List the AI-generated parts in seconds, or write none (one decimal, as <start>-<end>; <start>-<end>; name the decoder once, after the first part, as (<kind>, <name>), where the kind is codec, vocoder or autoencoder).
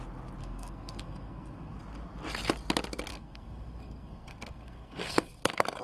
0.4-1.8 (codec, SNAC); 3.1-5.8